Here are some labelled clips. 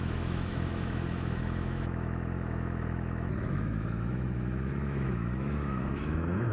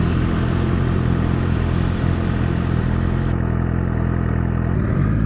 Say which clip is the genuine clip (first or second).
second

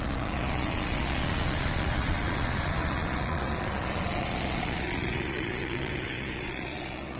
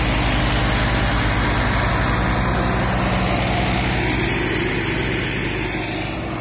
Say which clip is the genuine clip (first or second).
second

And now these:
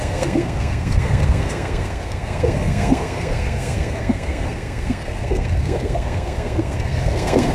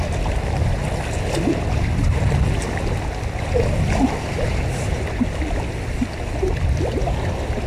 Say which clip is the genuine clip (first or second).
second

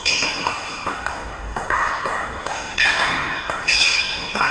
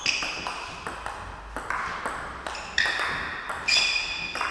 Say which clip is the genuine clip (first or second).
second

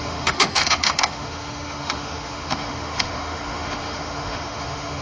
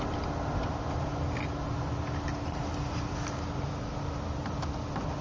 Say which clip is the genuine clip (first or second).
second